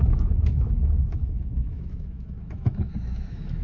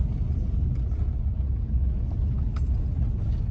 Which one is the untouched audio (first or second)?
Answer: second